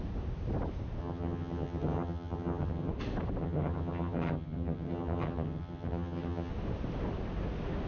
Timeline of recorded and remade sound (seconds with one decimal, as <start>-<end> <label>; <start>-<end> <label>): 0.0-1.0 recorded; 1.0-2.9 remade; 2.9-3.4 recorded; 3.4-6.5 remade; 6.5-7.9 recorded